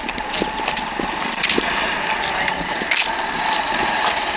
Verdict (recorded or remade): recorded